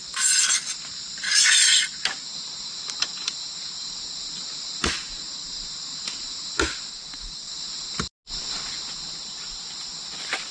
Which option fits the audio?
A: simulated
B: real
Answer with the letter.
B